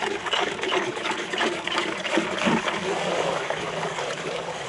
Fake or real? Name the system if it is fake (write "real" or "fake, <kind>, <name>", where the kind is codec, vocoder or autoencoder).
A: fake, codec, DAC